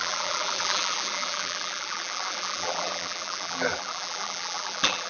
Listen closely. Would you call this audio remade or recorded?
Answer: remade